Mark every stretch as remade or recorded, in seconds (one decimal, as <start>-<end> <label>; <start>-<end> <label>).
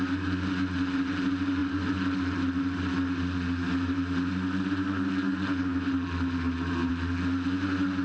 0.0-8.0 recorded